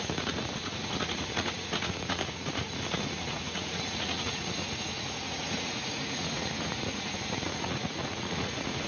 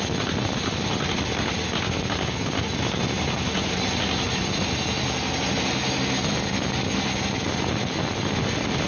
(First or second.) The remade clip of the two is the first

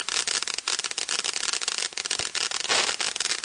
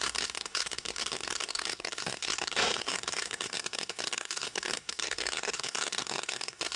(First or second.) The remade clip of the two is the second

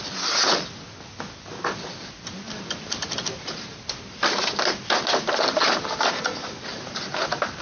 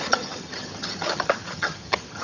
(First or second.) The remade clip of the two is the second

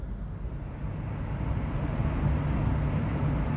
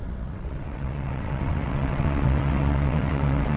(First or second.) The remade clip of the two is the second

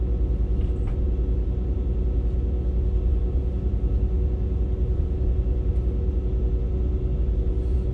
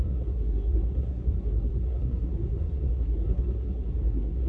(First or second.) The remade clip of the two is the second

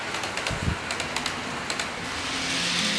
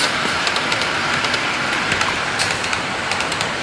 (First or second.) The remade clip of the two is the second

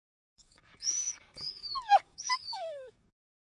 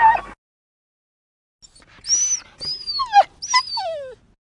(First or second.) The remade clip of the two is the first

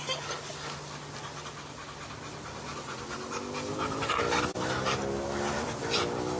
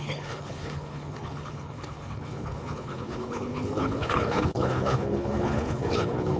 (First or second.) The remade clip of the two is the second